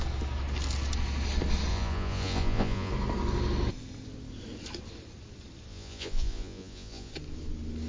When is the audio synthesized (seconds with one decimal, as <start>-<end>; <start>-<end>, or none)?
1.7-2.9; 5.7-7.1